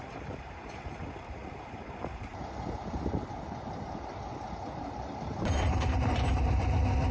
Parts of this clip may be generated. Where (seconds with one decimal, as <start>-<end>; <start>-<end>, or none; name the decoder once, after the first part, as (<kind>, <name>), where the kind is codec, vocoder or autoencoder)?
0.0-7.1 (vocoder, BigVGAN v2)